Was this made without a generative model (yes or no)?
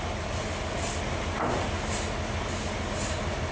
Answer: yes